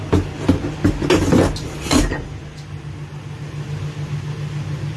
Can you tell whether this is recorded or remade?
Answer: recorded